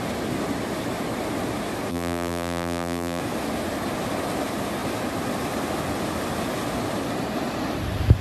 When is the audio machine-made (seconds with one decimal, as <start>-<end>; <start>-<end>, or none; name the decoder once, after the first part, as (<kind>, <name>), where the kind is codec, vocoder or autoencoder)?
1.9-3.2 (vocoder, BigVGAN v2)